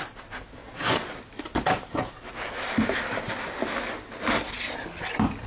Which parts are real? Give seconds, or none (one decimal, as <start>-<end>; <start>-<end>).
0.0-0.6; 3.9-5.5